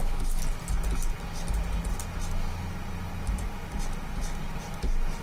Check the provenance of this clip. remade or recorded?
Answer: recorded